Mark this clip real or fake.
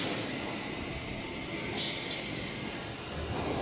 real